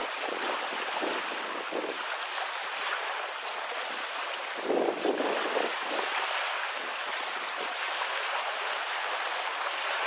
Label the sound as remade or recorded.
recorded